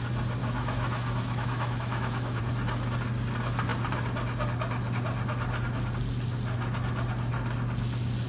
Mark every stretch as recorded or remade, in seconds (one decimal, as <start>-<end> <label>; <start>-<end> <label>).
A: 0.0-0.4 recorded; 0.4-2.4 remade; 2.4-8.3 recorded